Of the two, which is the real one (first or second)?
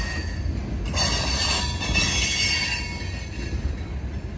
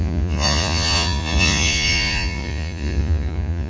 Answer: first